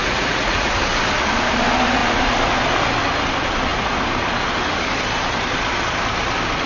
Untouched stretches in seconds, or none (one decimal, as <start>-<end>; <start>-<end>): 0.7-6.7